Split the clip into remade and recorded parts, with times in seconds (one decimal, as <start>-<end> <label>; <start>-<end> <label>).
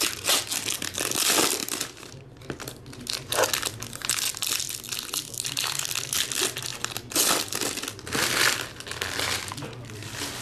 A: 0.0-4.0 recorded; 4.0-4.6 remade; 4.6-6.7 recorded; 6.7-7.4 remade; 7.4-10.4 recorded